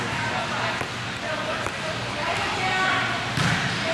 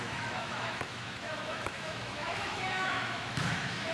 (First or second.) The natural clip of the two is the first